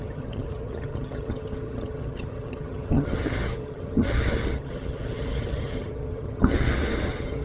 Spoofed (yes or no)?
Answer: yes